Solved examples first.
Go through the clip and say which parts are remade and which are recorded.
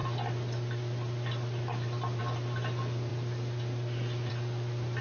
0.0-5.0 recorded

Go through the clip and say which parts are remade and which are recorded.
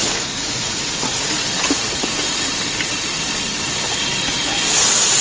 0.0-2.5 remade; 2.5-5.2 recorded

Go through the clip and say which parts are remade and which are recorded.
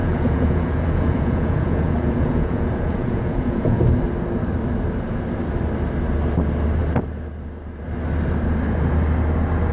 0.0-3.8 remade; 3.8-9.7 recorded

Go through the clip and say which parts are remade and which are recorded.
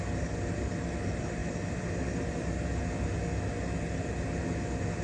0.0-5.0 recorded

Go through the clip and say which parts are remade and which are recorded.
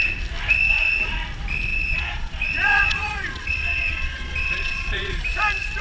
0.0-1.7 recorded; 1.7-5.2 remade; 5.2-5.8 recorded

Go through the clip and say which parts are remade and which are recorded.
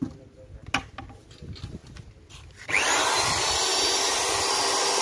0.0-5.0 recorded